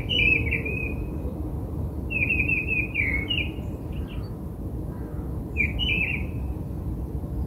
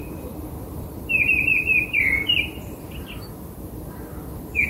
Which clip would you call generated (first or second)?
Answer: second